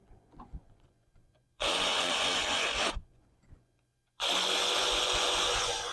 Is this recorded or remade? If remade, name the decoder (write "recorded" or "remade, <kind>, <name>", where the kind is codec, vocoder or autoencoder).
remade, vocoder, Vocos